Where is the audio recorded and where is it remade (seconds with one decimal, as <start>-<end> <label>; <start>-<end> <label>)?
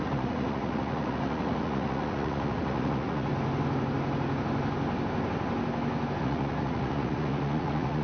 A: 0.0-3.3 remade; 3.3-6.2 recorded; 6.2-8.0 remade